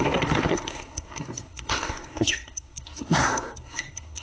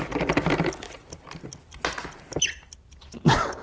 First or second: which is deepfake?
first